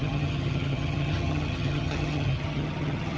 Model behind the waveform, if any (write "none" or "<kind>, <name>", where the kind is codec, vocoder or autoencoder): vocoder, HiFi-GAN